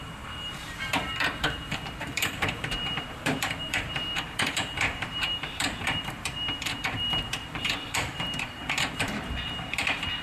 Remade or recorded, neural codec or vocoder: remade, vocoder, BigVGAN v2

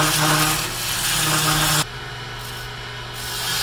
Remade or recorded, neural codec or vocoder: recorded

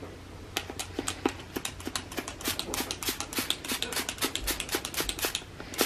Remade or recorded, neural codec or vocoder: recorded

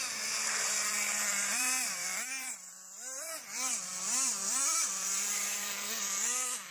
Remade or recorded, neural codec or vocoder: remade, vocoder, BigVGAN v2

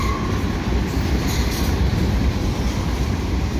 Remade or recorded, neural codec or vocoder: remade, vocoder, BigVGAN v2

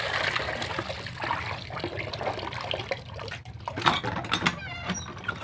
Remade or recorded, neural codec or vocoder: recorded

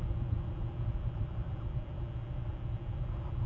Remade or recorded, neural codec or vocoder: recorded